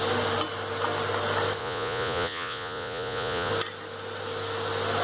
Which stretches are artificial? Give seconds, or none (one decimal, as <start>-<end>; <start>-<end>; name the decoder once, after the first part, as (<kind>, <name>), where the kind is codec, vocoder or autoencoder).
1.6-3.5 (vocoder, Vocos)